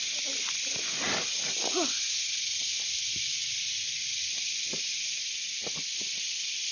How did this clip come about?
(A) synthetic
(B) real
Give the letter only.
B